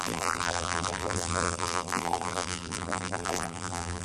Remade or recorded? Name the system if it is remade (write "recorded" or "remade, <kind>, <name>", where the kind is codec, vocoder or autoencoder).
remade, vocoder, BigVGAN v2